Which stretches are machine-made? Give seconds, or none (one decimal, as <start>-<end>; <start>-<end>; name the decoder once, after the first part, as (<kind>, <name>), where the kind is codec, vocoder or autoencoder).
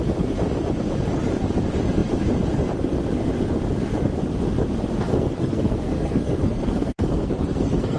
5.1-8.0 (codec, SNAC)